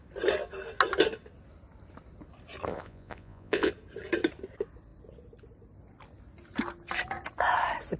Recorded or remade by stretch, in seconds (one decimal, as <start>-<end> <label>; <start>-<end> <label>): 0.0-2.7 recorded; 2.7-3.7 remade; 3.7-8.0 recorded